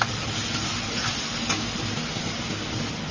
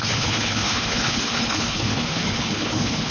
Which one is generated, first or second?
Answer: second